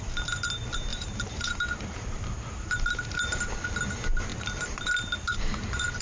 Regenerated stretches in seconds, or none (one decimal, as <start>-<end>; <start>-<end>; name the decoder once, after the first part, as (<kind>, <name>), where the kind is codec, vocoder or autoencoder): 0.9-3.5 (vocoder, BigVGAN v2); 4.3-4.8; 5.3-6.0